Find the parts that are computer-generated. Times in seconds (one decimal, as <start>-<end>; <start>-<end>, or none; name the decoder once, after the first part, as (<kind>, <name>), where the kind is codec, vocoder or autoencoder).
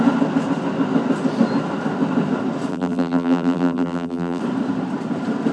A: 2.7-4.4 (vocoder, BigVGAN v2)